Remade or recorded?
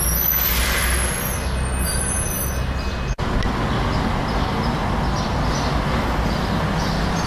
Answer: recorded